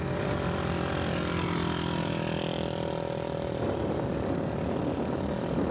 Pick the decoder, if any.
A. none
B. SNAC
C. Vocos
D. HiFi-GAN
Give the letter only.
A